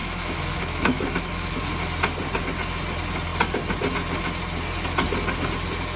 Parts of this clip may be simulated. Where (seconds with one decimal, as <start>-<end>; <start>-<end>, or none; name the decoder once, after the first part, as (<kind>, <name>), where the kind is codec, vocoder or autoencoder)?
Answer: 0.0-1.6 (autoencoder, DAC-VAE)